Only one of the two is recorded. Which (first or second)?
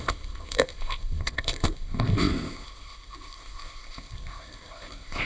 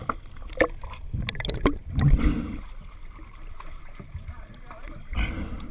second